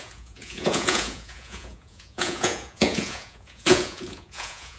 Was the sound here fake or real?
fake